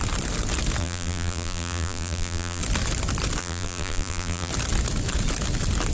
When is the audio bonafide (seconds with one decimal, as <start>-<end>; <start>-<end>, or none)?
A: 0.0-0.8; 2.6-3.4; 4.5-5.9